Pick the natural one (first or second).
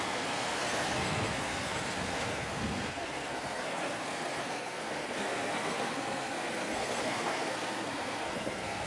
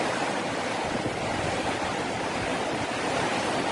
second